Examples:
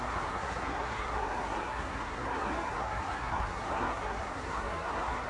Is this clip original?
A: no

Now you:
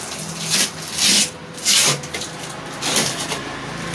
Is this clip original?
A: yes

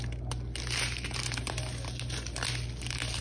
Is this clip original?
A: yes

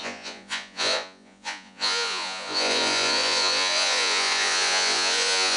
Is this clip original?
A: no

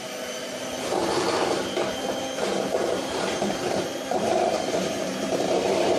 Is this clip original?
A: no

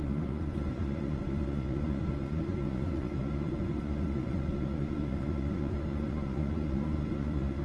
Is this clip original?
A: no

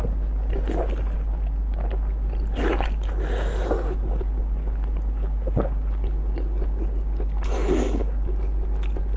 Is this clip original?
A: yes